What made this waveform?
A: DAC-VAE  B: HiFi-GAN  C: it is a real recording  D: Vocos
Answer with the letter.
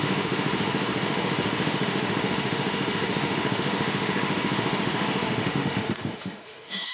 A